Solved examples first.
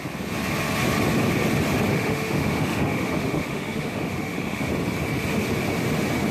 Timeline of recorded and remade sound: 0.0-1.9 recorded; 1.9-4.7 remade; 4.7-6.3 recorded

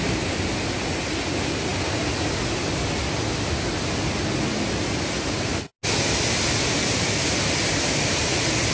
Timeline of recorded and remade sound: 0.0-8.7 recorded